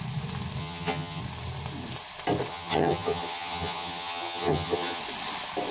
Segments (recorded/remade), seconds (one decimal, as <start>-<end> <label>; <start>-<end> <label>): 0.0-0.6 recorded; 0.6-1.2 remade; 1.2-2.5 recorded; 2.5-5.0 remade; 5.0-5.7 recorded